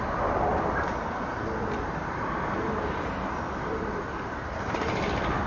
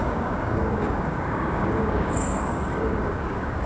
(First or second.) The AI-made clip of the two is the second